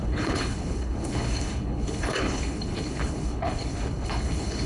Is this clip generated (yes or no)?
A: yes